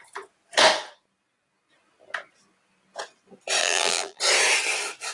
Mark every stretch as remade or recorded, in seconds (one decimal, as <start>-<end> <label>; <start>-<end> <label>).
0.0-3.6 recorded; 3.6-4.2 remade; 4.2-5.1 recorded